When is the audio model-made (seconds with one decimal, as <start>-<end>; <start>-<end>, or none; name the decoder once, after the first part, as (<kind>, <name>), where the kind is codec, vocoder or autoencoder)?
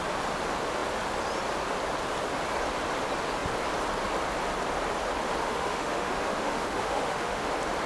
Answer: 5.4-7.5 (autoencoder, DAC-VAE)